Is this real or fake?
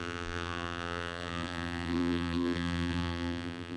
fake